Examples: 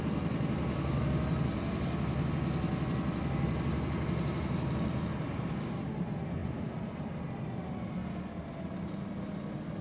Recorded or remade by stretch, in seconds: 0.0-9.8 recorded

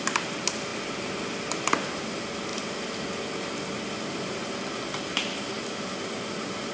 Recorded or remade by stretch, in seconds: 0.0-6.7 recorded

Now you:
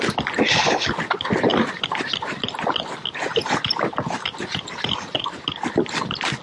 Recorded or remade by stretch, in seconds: 0.0-6.4 recorded

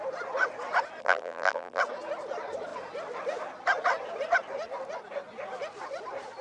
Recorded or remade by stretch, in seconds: 0.0-1.0 recorded; 1.0-1.8 remade; 1.8-6.4 recorded

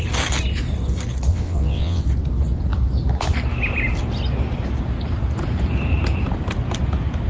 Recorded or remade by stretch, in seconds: 0.0-1.3 recorded; 1.3-2.0 remade; 2.0-7.3 recorded